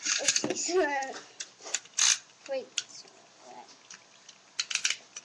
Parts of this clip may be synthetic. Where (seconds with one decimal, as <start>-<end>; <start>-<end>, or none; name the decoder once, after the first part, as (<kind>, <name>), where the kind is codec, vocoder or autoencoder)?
none

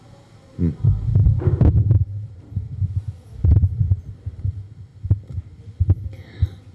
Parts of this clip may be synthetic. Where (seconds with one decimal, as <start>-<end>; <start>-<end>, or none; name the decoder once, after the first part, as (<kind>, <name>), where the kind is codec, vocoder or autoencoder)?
1.2-4.0 (vocoder, BigVGAN v2); 4.9-5.5

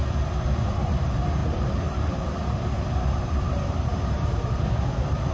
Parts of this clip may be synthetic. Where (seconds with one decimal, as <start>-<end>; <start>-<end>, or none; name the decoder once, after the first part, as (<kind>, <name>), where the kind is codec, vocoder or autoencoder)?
0.6-5.3 (vocoder, BigVGAN v2)

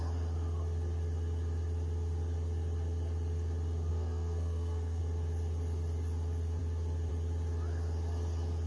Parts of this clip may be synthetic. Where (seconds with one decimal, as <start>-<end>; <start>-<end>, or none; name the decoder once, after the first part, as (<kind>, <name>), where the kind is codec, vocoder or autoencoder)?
3.9-5.0 (codec, SNAC)

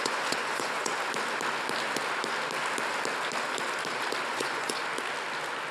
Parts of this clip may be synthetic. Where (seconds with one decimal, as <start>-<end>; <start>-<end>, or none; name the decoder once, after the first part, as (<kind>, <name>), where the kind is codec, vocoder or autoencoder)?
0.0-0.9 (vocoder, Vocos); 4.3-4.8